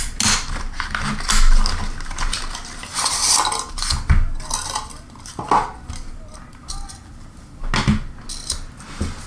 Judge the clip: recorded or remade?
recorded